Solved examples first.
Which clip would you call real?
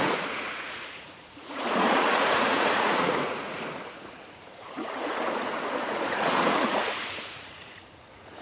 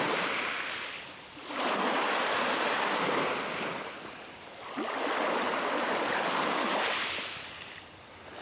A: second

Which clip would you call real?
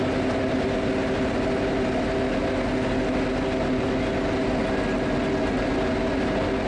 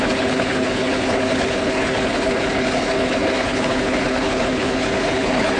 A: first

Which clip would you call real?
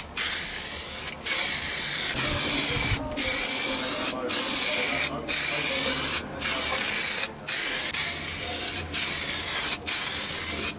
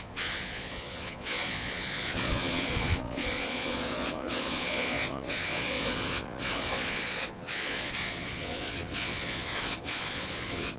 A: first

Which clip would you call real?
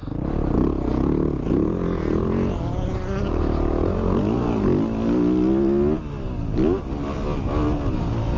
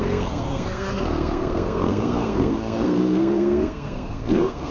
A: first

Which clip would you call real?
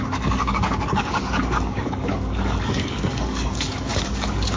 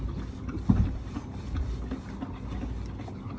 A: second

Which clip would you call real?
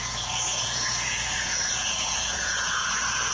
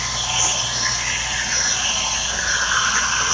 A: second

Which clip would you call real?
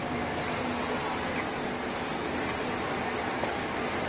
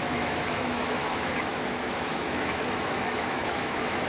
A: first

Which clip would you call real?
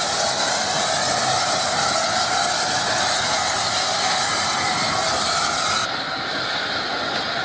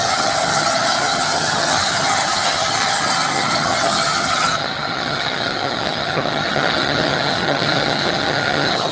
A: first